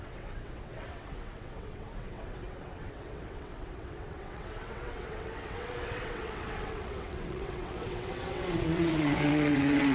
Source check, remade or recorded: remade